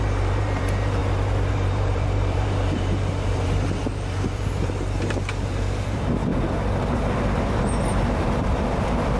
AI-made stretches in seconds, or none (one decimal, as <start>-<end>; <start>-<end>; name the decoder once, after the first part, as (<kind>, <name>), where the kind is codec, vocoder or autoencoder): 0.0-1.0 (vocoder, BigVGAN v2); 1.5-9.2